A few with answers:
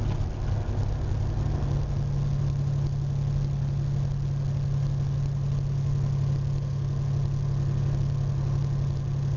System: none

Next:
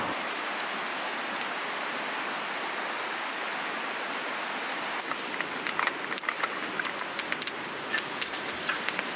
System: none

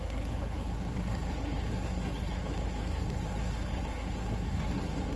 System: codec, SNAC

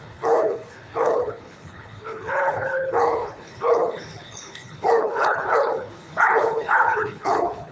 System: codec, HILCodec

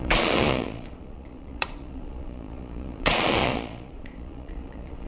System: vocoder, Vocos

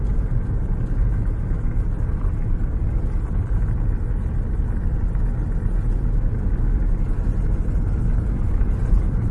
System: none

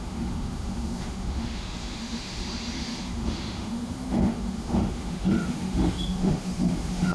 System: autoencoder, DAC-VAE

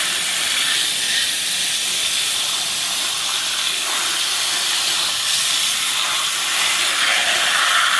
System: none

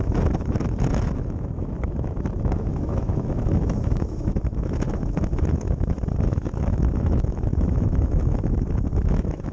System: autoencoder, DAC-VAE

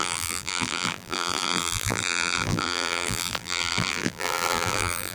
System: vocoder, BigVGAN v2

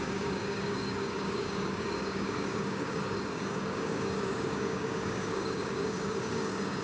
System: codec, DAC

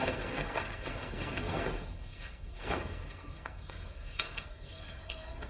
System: codec, SNAC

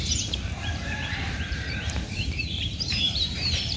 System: vocoder, BigVGAN v2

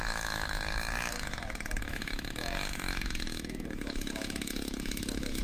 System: autoencoder, DAC-VAE